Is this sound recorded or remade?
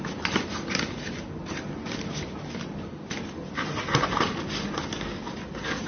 recorded